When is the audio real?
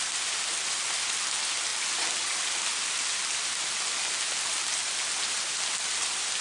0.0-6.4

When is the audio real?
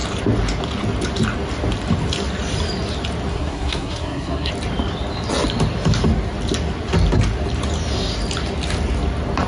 0.0-3.3; 4.5-9.5